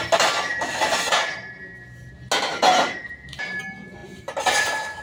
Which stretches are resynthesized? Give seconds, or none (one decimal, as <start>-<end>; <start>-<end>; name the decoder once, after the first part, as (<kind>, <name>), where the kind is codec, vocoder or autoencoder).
0.5-1.2 (vocoder, BigVGAN v2); 2.5-3.6; 4.0-5.0